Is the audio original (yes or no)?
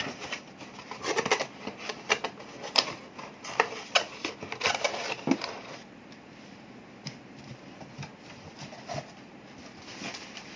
yes